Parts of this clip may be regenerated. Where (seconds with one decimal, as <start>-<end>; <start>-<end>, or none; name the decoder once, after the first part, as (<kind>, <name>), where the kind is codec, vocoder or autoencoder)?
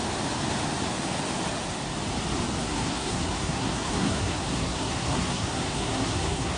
2.6-6.6 (codec, SNAC)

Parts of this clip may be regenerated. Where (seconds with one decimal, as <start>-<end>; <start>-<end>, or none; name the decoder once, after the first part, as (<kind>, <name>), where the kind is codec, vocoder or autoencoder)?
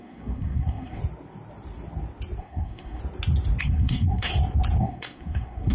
0.0-1.0 (codec, SNAC); 2.4-3.0; 3.6-4.3; 4.8-5.7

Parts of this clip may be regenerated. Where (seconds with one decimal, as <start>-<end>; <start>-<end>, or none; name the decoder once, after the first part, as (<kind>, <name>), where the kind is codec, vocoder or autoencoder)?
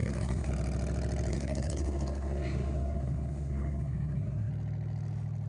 0.0-0.5 (codec, SNAC); 1.3-4.5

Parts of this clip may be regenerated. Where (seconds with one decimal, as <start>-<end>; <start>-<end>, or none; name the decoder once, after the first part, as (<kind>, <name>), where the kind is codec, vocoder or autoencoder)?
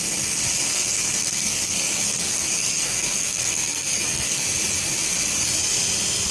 0.6-4.4 (codec, SNAC)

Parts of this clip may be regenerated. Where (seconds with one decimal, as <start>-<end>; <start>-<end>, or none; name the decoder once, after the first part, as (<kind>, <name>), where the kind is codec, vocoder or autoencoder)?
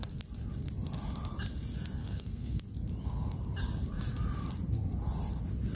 2.0-2.6 (codec, SNAC)